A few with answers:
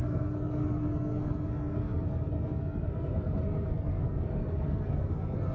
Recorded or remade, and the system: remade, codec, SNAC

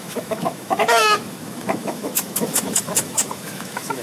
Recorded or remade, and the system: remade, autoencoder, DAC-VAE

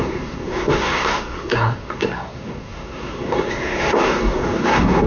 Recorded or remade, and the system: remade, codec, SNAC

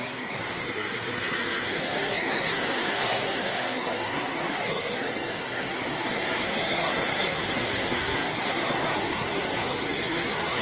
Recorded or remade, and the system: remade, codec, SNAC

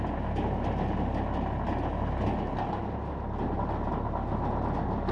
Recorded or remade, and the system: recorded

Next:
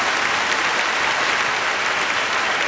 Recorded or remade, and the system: recorded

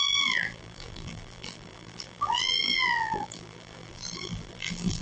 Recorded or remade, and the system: remade, vocoder, BigVGAN v2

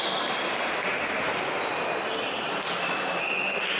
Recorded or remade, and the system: recorded